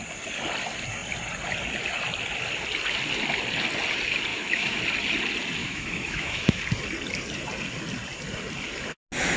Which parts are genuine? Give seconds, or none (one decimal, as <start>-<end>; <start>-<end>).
0.0-4.3; 4.8-5.6; 6.6-9.4